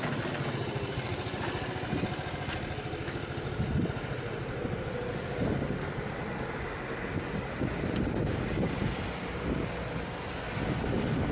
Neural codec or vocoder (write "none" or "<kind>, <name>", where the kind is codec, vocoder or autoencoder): none